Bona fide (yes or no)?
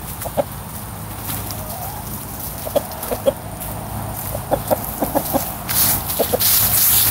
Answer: yes